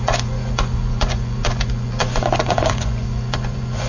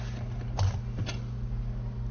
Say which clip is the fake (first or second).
first